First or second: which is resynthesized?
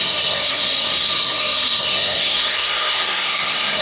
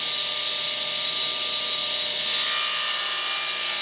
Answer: first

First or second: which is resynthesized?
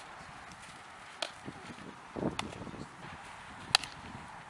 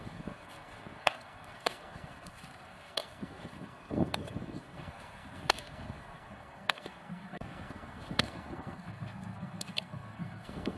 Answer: second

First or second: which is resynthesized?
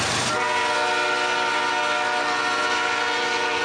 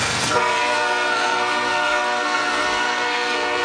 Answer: second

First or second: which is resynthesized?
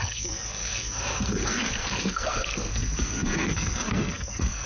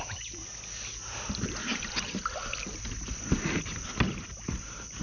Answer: first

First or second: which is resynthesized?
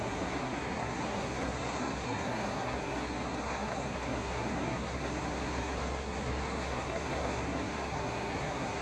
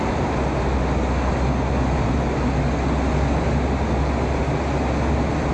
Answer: first